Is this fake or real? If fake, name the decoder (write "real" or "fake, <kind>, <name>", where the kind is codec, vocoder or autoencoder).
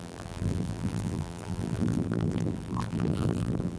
fake, vocoder, BigVGAN v2